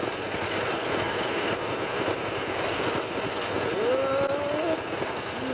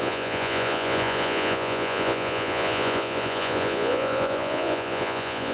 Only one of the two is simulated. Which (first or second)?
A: second